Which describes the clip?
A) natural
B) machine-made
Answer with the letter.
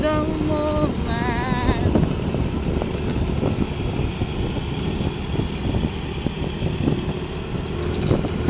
A